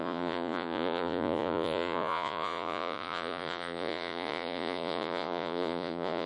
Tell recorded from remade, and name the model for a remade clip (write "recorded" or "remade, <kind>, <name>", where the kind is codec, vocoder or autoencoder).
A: remade, vocoder, Vocos